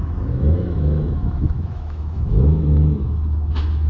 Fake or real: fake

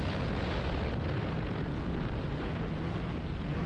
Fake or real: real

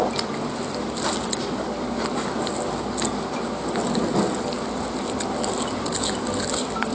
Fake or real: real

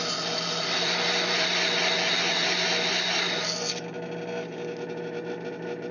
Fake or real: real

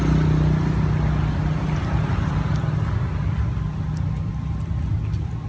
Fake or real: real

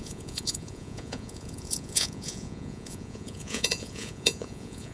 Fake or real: fake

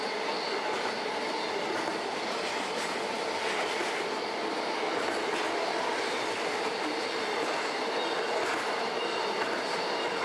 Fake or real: real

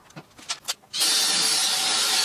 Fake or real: real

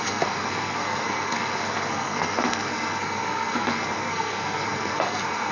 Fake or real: fake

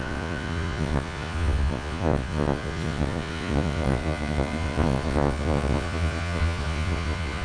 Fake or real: fake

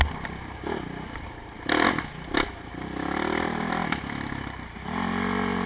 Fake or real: real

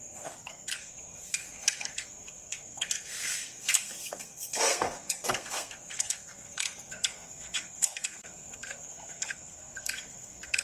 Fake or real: fake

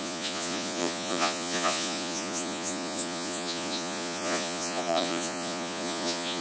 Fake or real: fake